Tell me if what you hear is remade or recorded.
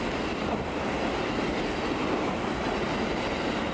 recorded